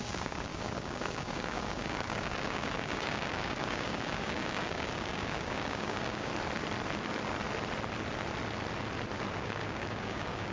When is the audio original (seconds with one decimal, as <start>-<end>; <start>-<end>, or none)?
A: 6.3-9.4